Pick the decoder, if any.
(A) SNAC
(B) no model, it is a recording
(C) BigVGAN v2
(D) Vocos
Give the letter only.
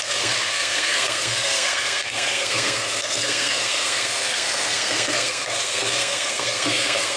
A